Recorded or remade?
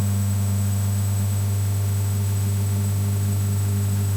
remade